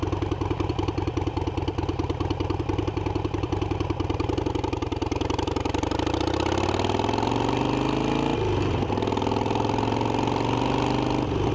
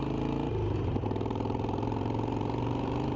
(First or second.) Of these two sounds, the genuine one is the first